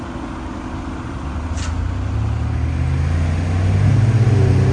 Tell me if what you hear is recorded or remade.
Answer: recorded